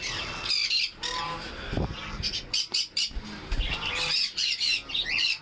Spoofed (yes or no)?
no